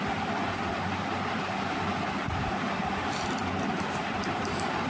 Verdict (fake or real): real